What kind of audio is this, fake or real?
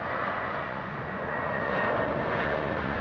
fake